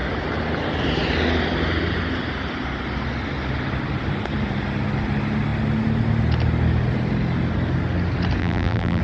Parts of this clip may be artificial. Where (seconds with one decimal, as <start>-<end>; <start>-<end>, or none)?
8.4-9.0